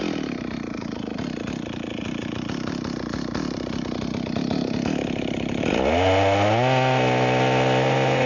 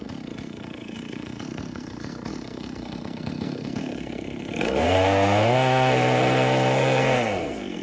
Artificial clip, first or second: second